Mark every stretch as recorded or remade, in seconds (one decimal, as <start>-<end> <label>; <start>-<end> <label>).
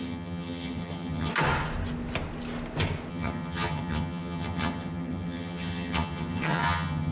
0.0-1.3 remade; 1.3-3.1 recorded; 3.1-7.1 remade